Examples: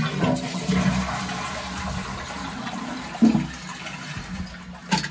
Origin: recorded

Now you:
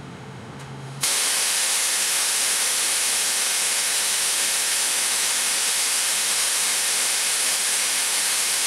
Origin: remade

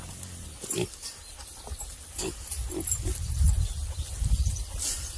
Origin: recorded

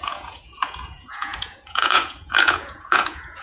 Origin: remade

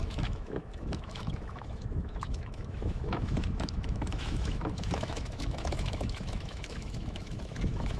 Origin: remade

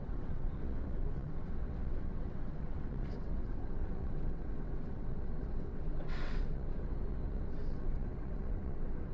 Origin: remade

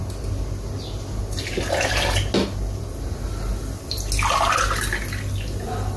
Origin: recorded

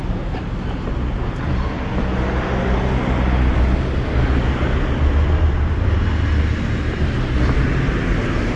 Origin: recorded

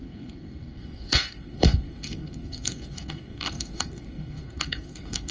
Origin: remade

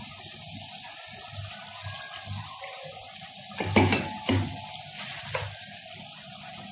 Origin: recorded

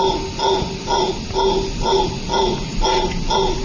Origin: recorded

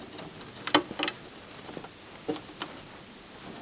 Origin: recorded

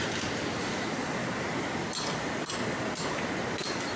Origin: recorded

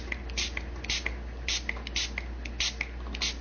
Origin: recorded